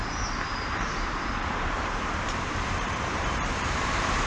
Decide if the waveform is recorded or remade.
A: remade